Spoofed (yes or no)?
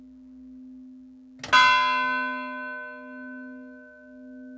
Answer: no